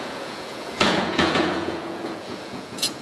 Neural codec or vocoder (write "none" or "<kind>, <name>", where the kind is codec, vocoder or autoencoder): vocoder, Vocos